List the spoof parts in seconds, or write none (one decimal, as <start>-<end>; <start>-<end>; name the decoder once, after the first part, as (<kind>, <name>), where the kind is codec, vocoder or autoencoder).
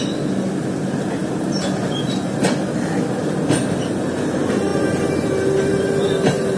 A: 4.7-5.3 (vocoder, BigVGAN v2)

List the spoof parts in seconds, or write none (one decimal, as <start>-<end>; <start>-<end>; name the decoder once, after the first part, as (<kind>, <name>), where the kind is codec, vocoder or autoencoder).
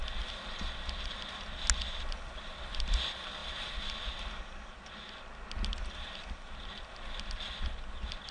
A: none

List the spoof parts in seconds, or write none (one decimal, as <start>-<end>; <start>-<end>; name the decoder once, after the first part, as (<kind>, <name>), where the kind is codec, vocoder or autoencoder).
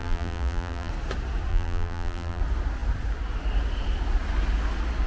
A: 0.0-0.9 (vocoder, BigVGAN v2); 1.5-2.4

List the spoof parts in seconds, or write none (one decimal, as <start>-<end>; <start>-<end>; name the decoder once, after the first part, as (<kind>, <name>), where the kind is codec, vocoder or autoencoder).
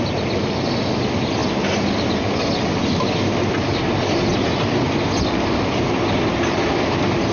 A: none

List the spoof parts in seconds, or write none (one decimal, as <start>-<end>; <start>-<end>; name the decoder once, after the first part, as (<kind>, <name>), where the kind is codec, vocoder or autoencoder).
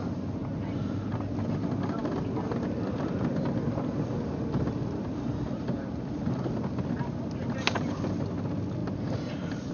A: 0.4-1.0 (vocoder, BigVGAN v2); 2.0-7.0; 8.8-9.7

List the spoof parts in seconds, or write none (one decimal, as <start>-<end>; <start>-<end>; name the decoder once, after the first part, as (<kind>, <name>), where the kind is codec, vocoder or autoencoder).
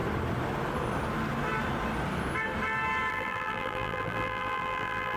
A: 3.1-5.2 (vocoder, BigVGAN v2)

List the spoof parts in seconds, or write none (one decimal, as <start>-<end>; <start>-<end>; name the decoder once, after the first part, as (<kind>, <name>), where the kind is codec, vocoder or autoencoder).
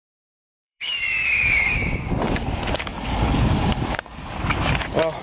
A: 0.0-2.3 (vocoder, BigVGAN v2); 2.9-4.6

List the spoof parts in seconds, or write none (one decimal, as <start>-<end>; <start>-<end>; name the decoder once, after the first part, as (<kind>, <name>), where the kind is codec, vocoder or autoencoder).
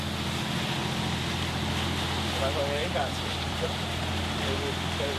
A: 2.8-4.0 (vocoder, BigVGAN v2)